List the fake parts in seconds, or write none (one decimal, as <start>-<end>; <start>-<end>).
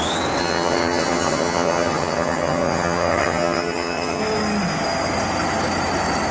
0.4-4.2